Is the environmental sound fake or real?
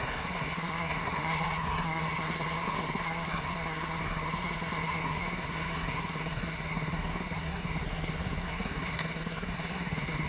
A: fake